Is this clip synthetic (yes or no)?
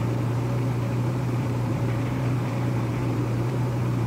yes